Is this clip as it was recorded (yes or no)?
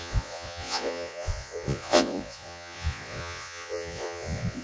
no